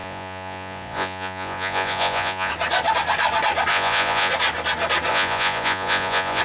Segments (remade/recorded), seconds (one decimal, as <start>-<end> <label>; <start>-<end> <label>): 0.0-2.5 remade; 2.5-3.7 recorded; 3.7-4.3 remade; 4.3-5.1 recorded; 5.1-6.4 remade